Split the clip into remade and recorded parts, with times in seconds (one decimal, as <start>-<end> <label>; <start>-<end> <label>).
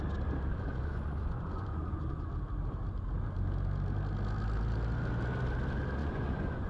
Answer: 0.0-0.5 recorded; 0.5-2.3 remade; 2.3-6.0 recorded; 6.0-6.7 remade